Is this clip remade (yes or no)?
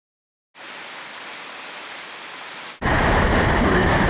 no